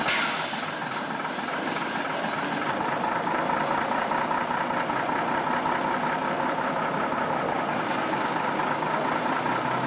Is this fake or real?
real